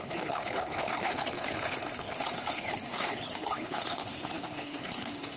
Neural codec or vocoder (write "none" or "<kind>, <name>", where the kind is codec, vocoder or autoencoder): codec, HILCodec